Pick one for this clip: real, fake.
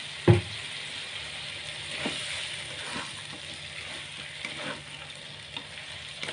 real